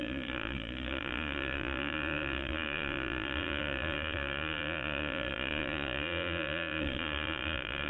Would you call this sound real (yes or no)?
no